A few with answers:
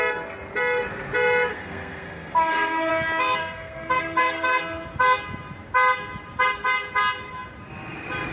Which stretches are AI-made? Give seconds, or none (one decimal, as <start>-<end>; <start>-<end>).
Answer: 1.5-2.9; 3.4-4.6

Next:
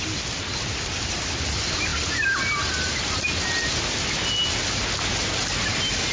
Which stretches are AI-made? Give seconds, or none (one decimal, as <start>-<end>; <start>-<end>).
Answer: none

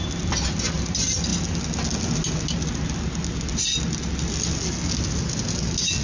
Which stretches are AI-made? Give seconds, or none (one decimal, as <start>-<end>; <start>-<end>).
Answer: none

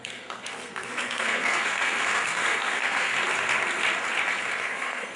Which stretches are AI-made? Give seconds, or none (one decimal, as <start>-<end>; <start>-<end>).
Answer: 0.0-3.1; 4.6-5.2

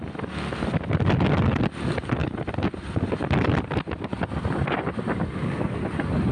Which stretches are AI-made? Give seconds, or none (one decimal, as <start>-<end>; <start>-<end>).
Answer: none